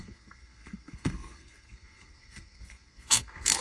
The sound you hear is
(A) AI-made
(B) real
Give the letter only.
A